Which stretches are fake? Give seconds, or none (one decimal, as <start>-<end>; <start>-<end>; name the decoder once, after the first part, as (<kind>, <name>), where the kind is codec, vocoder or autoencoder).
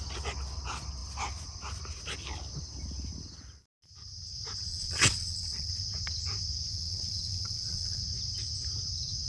4.7-5.7 (vocoder, WaveNeXt); 6.7-8.0